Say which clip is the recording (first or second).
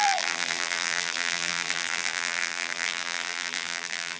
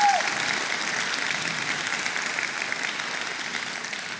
second